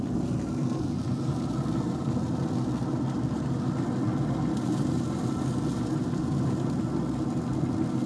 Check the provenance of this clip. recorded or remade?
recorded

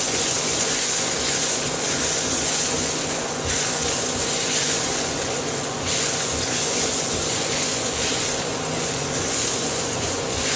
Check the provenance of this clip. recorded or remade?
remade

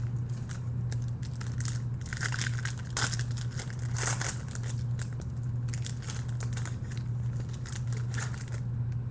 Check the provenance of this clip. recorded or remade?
recorded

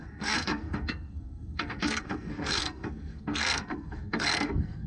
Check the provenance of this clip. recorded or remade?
remade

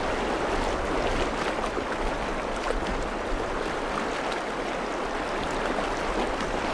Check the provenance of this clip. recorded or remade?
recorded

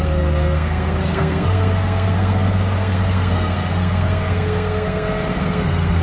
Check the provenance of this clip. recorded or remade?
remade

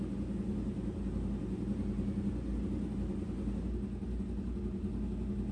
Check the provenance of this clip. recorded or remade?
recorded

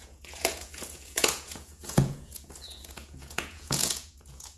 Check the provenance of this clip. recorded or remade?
remade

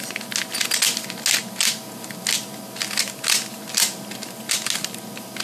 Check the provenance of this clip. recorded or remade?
recorded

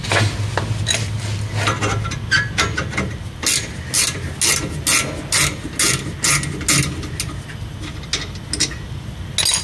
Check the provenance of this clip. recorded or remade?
recorded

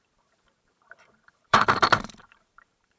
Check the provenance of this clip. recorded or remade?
remade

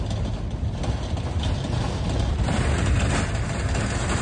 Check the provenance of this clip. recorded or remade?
recorded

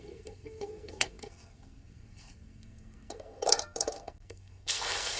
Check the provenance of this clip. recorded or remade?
remade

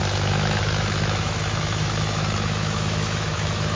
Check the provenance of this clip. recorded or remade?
remade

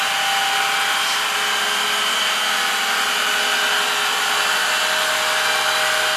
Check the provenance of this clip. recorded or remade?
recorded